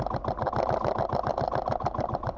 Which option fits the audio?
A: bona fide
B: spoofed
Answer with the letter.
A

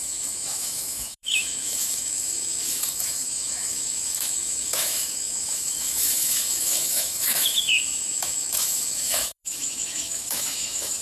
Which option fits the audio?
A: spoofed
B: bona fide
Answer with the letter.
A